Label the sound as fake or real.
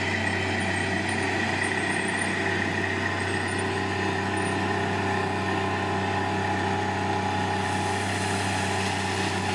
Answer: real